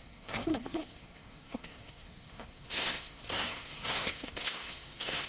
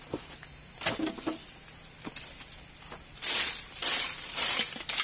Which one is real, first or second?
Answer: second